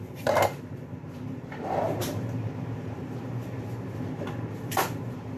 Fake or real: fake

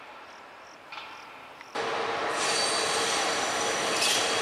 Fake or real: real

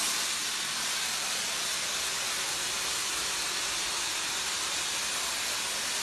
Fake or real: real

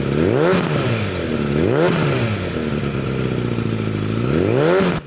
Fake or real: real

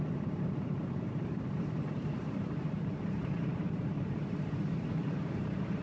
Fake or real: fake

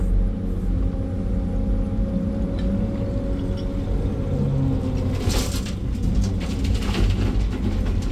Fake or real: real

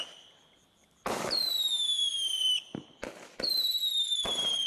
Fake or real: real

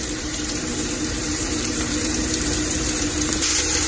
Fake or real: fake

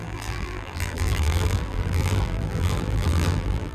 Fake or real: fake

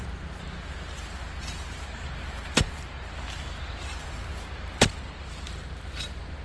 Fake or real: fake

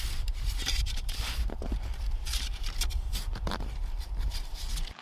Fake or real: fake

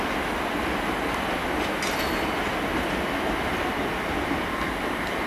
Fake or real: real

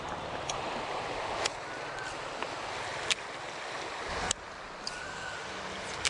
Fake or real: real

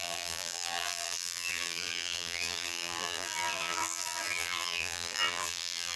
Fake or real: fake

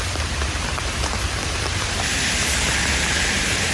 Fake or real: fake